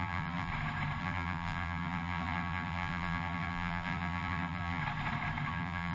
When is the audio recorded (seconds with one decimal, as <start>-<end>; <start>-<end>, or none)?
0.5-1.0; 4.8-5.5